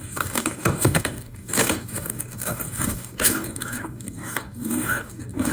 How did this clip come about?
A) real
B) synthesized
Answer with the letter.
B